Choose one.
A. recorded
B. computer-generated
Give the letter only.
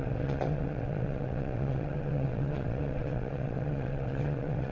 B